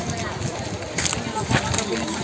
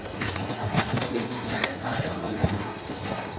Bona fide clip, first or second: first